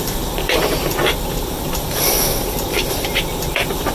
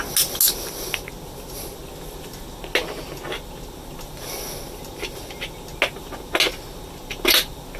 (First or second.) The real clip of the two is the second